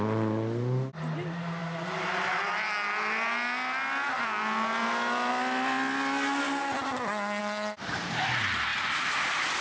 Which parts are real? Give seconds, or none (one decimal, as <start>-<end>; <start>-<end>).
0.0-9.6